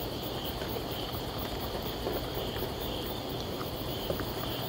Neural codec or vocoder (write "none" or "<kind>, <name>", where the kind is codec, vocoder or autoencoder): vocoder, BigVGAN v2